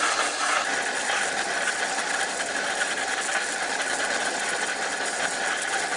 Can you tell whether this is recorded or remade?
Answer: recorded